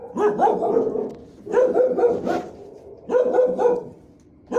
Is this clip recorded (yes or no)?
yes